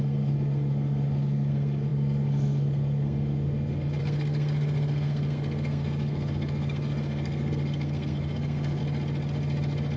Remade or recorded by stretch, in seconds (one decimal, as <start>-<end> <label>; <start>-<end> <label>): 0.0-8.8 remade; 8.8-10.0 recorded